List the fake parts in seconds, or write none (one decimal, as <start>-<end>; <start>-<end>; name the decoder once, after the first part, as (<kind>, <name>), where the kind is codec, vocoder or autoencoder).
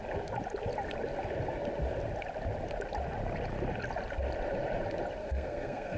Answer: 5.2-6.0 (codec, SNAC)